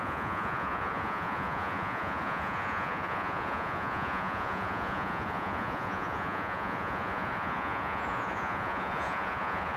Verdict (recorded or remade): remade